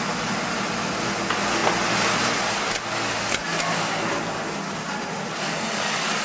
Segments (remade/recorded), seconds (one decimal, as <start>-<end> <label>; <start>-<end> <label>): 0.0-6.2 recorded